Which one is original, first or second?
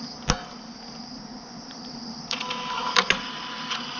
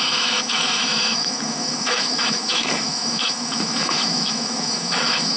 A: first